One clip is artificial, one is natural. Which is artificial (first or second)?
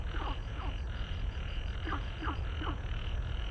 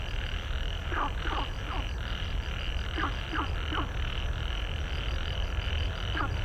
first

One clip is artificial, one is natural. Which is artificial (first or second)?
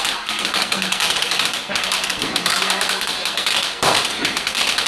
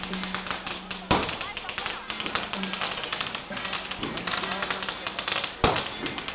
first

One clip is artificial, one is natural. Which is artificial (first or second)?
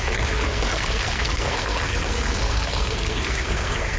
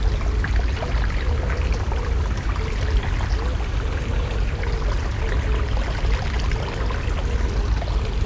first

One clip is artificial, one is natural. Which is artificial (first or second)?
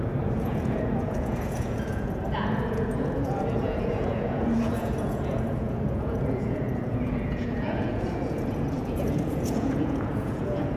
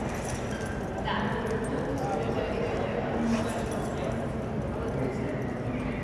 first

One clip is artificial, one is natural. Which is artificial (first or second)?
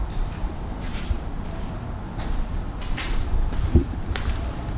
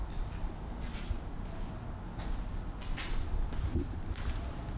first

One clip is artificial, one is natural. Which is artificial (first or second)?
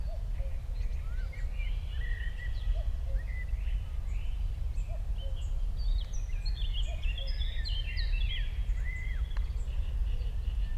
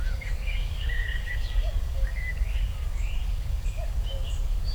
second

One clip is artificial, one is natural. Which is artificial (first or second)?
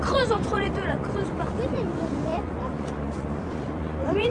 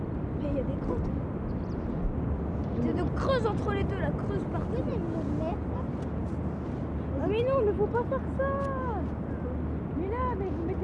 first